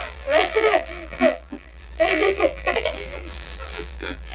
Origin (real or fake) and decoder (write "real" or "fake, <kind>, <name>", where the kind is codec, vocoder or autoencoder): fake, vocoder, BigVGAN v2